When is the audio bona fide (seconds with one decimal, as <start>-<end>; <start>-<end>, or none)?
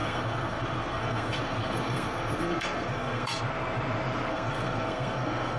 3.4-4.3